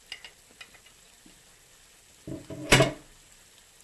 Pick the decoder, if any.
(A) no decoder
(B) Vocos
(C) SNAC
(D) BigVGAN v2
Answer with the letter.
A